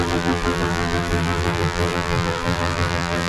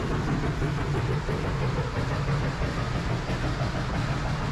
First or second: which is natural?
second